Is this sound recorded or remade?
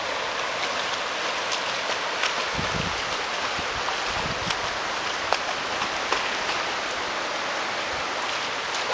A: recorded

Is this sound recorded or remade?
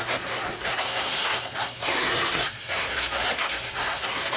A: remade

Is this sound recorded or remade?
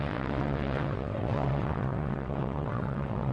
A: remade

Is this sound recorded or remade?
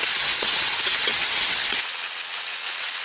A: remade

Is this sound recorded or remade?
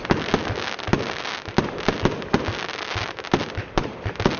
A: recorded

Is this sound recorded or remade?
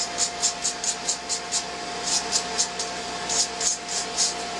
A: recorded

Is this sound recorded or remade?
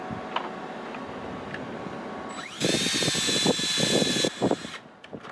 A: recorded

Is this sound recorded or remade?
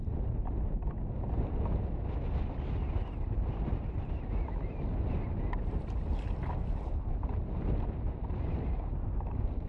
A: recorded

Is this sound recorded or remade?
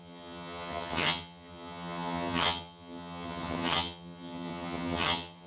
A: remade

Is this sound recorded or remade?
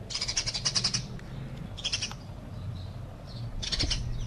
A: recorded